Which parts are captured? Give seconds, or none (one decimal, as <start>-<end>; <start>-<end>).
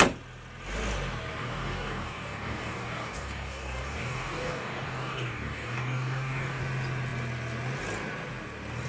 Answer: 0.0-1.4; 6.6-8.9